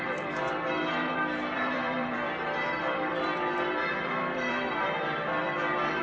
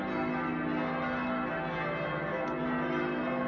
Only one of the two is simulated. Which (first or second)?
first